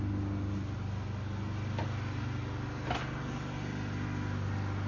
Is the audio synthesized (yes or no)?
no